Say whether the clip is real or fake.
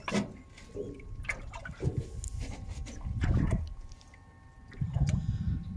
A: real